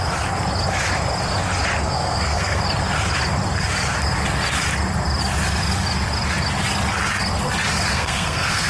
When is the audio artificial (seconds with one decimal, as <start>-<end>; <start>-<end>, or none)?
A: 1.8-2.6; 7.9-8.7